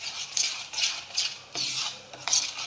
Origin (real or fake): real